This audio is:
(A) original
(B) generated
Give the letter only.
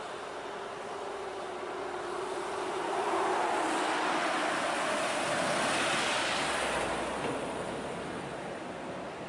A